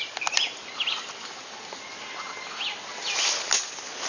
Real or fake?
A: real